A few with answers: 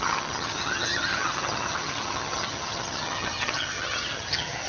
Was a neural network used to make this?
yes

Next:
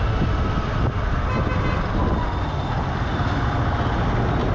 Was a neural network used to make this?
no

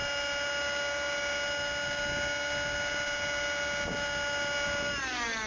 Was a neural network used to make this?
no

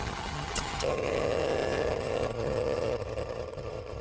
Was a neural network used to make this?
yes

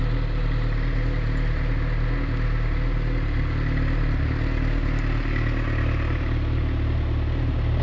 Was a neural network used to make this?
no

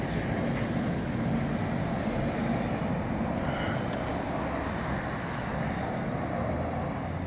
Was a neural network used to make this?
no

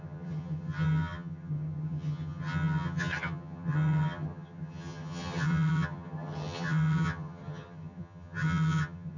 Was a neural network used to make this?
yes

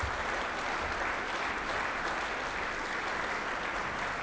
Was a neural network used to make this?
no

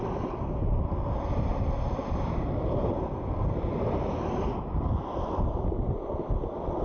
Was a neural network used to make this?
no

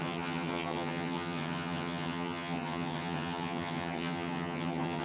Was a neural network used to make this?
yes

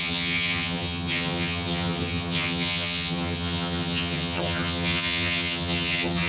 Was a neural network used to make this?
yes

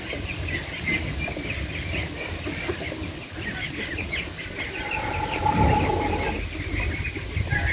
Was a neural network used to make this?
no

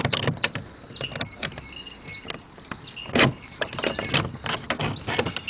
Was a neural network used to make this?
no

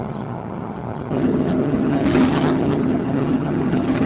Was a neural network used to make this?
yes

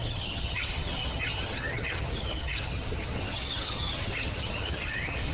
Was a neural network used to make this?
yes